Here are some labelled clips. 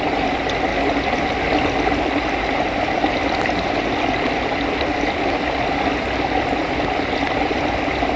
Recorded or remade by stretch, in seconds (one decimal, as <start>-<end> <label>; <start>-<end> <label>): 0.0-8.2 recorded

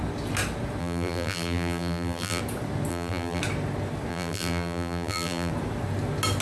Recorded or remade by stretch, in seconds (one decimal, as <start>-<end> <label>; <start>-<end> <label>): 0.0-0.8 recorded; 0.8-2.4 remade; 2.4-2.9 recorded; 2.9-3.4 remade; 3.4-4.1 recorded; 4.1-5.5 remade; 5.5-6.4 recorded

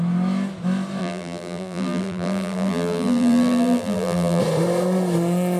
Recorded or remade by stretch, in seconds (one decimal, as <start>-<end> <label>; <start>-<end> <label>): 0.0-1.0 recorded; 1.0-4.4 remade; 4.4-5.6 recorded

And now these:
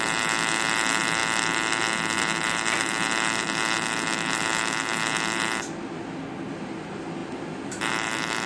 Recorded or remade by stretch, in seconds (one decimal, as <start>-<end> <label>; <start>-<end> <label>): 0.0-8.5 recorded